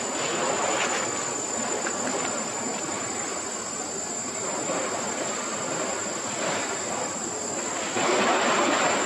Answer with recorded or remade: recorded